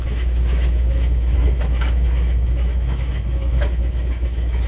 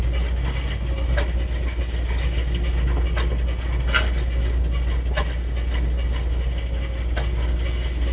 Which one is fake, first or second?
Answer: first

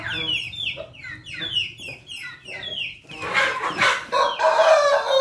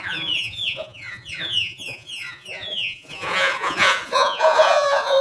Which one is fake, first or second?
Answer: second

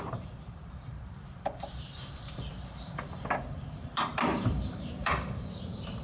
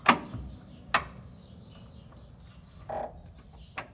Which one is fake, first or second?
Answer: first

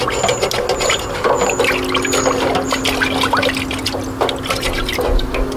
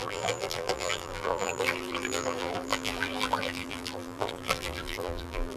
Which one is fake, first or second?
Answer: second